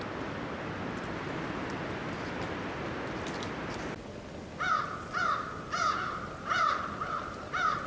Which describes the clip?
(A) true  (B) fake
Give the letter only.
A